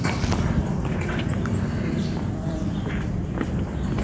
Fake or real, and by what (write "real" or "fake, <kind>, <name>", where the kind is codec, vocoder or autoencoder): real